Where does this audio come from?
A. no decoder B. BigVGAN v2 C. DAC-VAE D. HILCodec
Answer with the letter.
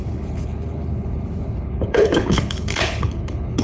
D